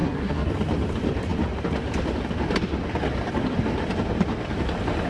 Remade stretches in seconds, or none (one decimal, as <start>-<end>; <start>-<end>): 0.0-0.5